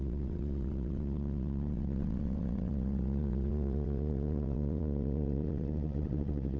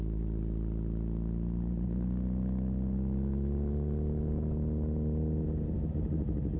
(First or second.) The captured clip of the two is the second